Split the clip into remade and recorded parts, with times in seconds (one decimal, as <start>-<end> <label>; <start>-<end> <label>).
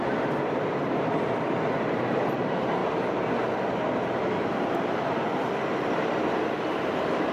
0.0-2.8 remade; 2.8-4.3 recorded; 4.3-5.3 remade; 5.3-6.7 recorded; 6.7-7.3 remade